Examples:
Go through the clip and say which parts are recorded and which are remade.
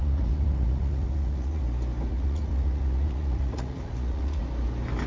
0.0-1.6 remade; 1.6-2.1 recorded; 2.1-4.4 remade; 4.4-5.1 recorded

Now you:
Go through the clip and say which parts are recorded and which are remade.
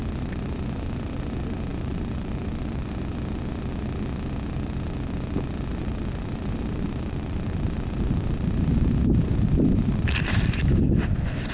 0.0-1.7 recorded; 1.7-2.9 remade; 2.9-5.7 recorded; 5.7-10.5 remade; 10.5-11.5 recorded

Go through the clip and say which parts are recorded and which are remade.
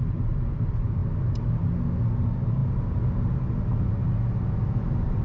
0.0-5.2 recorded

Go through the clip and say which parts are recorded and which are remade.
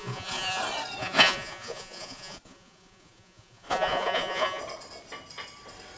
0.0-0.6 remade; 0.6-1.0 recorded; 1.0-4.6 remade; 4.6-6.0 recorded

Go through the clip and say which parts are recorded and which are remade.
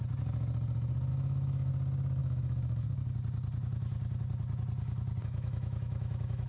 0.0-1.1 recorded; 1.1-1.7 remade; 1.7-2.2 recorded; 2.2-2.9 remade; 2.9-5.2 recorded; 5.2-6.5 remade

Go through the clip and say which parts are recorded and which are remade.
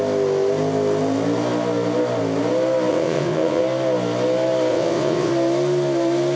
0.0-2.9 recorded; 2.9-3.6 remade; 3.6-4.7 recorded; 4.7-5.3 remade; 5.3-6.4 recorded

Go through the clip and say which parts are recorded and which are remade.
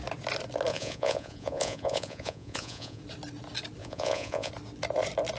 0.0-0.7 recorded; 0.7-3.0 remade; 3.0-3.8 recorded; 3.8-4.5 remade; 4.5-5.4 recorded